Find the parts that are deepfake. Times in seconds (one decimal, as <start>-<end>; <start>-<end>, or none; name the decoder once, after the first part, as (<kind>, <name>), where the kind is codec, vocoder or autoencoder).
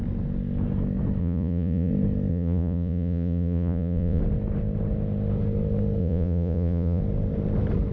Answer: 1.2-1.9 (vocoder, Vocos); 2.3-4.2; 6.0-7.0